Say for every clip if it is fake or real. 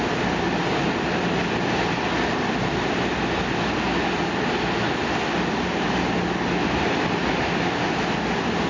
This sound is real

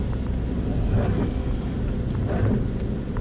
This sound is real